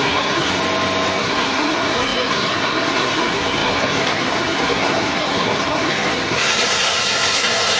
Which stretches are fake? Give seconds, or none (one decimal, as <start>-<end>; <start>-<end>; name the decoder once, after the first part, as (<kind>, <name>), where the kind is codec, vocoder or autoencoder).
0.0-0.6 (codec, SNAC); 1.2-7.8